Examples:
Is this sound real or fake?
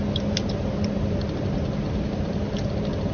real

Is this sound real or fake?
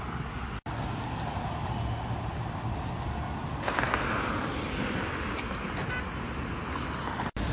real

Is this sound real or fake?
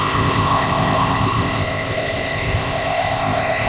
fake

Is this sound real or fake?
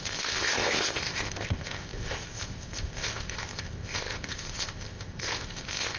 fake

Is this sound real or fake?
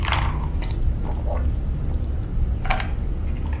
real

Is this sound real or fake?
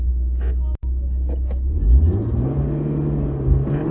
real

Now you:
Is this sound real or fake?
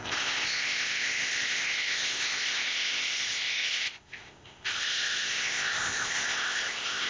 fake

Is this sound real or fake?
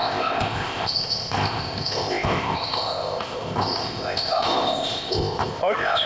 fake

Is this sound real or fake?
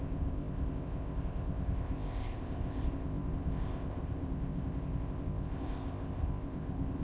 fake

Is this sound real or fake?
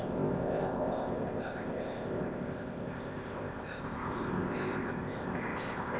fake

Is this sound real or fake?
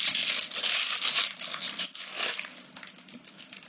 real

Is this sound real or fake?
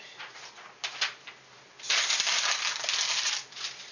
real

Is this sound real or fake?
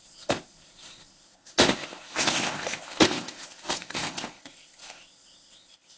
fake